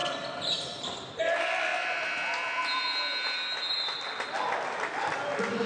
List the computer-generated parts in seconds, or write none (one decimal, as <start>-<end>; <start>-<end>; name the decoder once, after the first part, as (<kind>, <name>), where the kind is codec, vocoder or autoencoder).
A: none